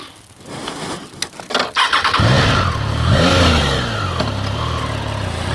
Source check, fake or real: real